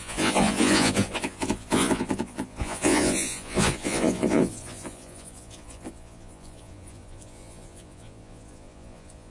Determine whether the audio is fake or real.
fake